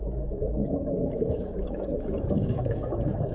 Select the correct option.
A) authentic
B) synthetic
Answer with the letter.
B